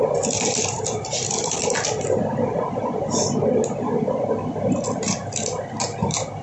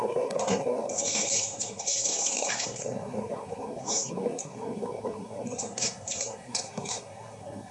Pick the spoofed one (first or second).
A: second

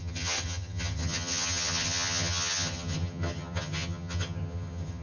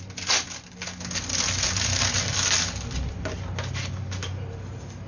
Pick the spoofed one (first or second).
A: first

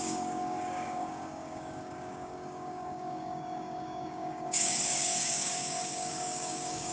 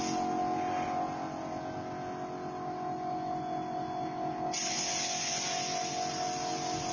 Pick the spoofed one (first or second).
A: first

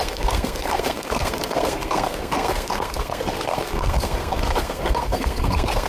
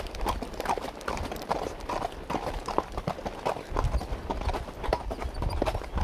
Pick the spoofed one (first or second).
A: first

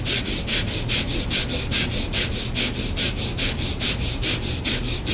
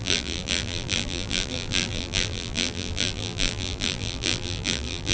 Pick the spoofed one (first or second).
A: second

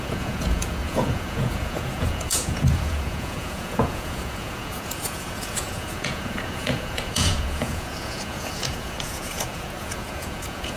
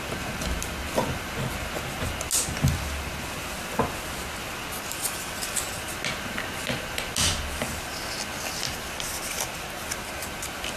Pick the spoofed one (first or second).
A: first